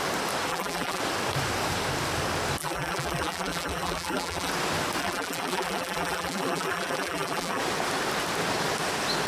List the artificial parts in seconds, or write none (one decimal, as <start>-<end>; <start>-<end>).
0.5-1.0; 2.6-4.5; 5.0-7.6